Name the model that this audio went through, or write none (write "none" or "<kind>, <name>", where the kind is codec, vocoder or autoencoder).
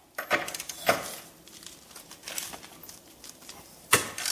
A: none